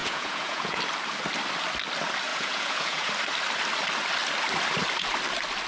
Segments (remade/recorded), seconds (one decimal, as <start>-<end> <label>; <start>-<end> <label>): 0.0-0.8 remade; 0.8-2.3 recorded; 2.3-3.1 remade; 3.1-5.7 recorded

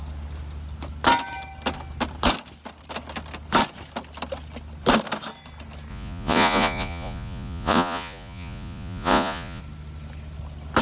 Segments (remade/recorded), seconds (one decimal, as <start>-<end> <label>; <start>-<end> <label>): 0.0-5.9 recorded; 5.9-9.6 remade; 9.6-10.8 recorded

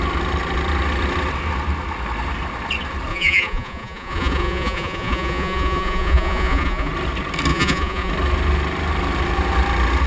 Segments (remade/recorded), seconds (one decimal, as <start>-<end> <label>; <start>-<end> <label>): 0.0-3.1 recorded; 3.1-6.9 remade; 6.9-7.5 recorded; 7.5-8.1 remade; 8.1-10.1 recorded

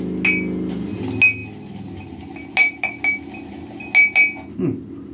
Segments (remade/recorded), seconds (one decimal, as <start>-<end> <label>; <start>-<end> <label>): 0.0-5.1 recorded